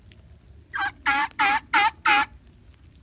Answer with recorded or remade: recorded